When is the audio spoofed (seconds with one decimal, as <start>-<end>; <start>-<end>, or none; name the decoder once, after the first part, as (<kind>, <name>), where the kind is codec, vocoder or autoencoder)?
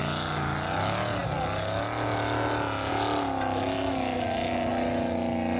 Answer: none